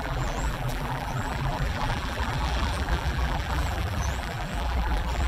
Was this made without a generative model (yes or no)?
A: no